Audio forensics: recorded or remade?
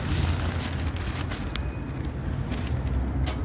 recorded